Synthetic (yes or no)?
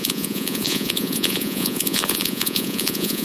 yes